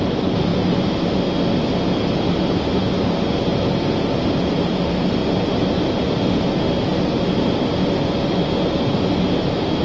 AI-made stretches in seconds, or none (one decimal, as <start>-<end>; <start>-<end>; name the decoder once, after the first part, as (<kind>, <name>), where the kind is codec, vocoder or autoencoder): none

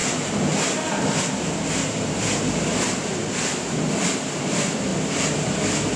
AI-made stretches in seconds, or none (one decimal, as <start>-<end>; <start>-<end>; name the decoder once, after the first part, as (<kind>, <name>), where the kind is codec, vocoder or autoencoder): none